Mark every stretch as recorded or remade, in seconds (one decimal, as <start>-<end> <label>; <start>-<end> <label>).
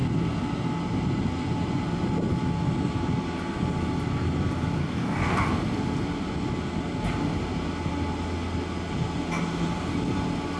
0.0-4.8 recorded; 4.8-5.5 remade; 5.5-10.6 recorded